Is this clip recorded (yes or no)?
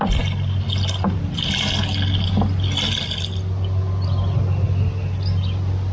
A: yes